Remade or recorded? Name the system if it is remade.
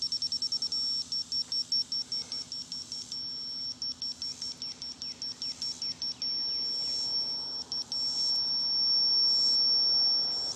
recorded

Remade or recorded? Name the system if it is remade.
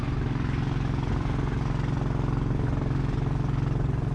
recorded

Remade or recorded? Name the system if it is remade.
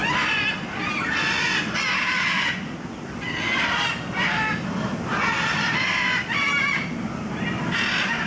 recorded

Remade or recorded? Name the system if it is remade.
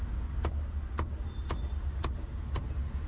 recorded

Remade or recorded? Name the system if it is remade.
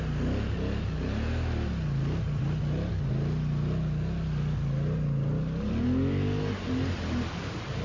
recorded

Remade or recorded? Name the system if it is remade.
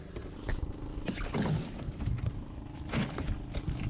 recorded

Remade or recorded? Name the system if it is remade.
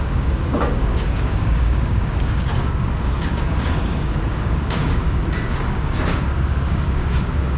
remade, codec, DAC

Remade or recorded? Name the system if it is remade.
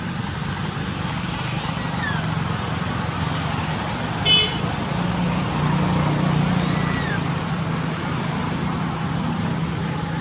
recorded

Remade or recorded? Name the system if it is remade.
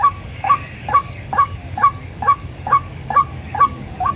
remade, codec, DAC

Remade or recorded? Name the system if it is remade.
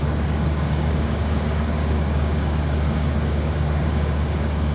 remade, codec, DAC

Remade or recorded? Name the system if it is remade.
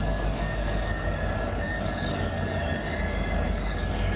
remade, codec, DAC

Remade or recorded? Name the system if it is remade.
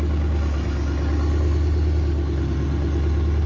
recorded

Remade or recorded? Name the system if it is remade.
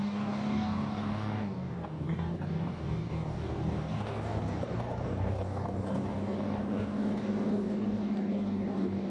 remade, codec, DAC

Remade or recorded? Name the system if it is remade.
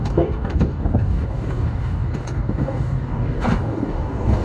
remade, codec, DAC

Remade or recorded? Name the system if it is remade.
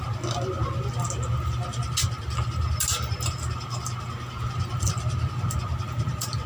recorded